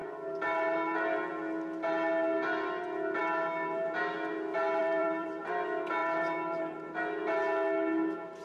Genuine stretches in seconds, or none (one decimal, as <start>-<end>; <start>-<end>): 1.3-4.8; 5.5-6.0; 6.6-8.4